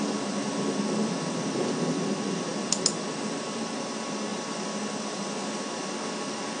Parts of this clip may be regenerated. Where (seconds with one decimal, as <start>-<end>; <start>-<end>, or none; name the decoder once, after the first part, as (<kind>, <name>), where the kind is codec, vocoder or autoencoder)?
none